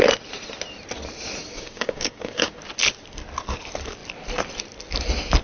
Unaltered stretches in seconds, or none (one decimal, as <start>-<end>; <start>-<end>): 0.0-1.4; 2.5-5.4